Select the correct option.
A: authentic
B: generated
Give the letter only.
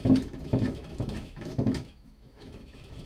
B